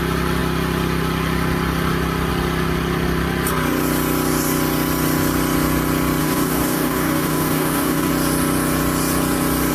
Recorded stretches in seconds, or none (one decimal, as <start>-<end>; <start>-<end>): 0.0-6.2; 8.1-9.7